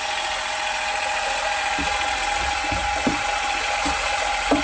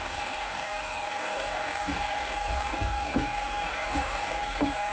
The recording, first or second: first